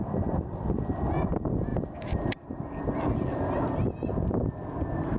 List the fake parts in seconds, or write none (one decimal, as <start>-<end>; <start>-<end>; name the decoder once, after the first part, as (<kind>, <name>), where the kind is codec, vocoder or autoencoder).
none